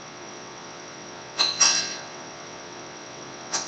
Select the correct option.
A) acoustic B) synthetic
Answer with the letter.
B